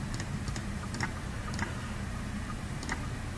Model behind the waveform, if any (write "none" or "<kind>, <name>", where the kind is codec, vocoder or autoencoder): vocoder, BigVGAN v2